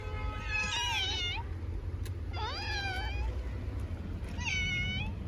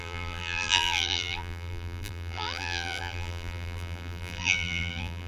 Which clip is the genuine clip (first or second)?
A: first